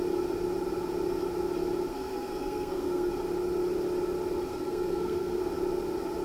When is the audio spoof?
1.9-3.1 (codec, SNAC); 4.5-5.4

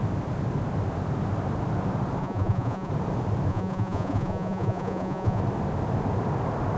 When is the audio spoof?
2.2-2.9 (vocoder, Vocos); 3.5-5.4

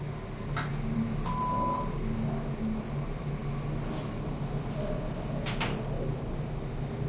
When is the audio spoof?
none

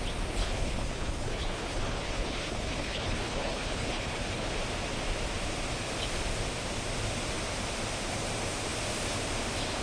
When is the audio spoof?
0.4-4.5 (codec, HILCodec)

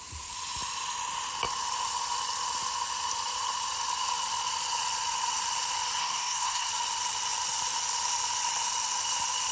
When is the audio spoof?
6.0-6.7 (codec, SNAC)